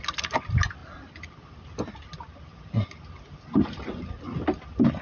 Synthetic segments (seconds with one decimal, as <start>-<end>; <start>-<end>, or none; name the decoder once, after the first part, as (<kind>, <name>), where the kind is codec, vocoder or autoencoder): none